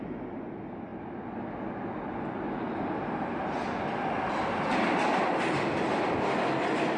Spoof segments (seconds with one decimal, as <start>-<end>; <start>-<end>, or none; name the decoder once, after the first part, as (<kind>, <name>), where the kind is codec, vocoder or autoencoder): none